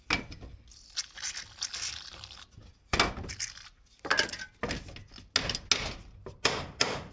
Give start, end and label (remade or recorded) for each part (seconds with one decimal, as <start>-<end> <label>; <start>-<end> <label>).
0.0-7.1 recorded